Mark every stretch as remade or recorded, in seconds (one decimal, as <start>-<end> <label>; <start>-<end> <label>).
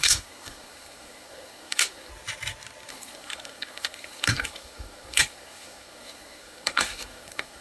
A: 0.0-2.1 remade; 2.1-2.9 recorded; 2.9-7.6 remade